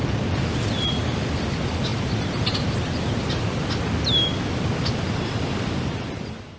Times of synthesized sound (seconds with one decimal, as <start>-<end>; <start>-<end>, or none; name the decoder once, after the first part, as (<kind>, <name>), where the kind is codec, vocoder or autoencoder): none